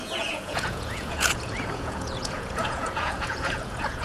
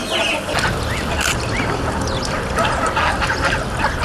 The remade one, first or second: first